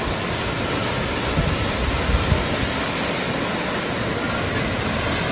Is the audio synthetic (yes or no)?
no